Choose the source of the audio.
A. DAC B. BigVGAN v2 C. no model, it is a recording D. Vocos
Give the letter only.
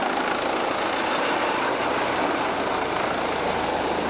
C